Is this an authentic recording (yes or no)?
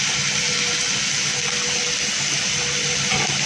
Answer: yes